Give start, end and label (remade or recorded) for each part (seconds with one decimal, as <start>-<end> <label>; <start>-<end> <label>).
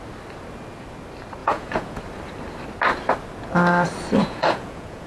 0.0-1.4 recorded; 1.4-2.0 remade; 2.0-4.2 recorded; 4.2-5.1 remade